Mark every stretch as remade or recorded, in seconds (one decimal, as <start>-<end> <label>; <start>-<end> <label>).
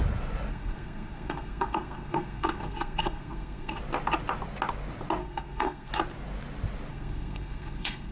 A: 0.0-0.5 recorded; 0.5-3.8 remade; 3.8-5.2 recorded; 5.2-5.9 remade; 5.9-6.9 recorded; 6.9-8.1 remade